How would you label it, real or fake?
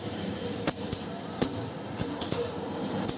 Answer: fake